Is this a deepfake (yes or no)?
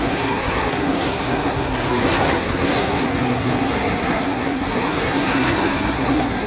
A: yes